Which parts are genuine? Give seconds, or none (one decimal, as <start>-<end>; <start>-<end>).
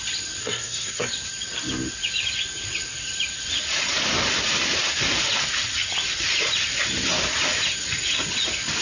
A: 0.0-0.4; 1.1-8.8